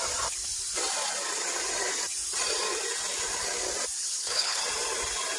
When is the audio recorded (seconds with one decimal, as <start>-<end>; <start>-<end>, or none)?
0.0-4.0; 4.6-5.4